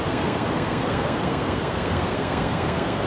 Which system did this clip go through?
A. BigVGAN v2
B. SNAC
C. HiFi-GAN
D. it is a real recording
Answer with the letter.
B